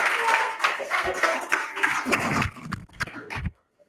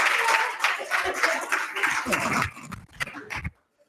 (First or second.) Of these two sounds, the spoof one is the first